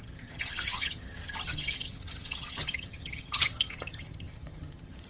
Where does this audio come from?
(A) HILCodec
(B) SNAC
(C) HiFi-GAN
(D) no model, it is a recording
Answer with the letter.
C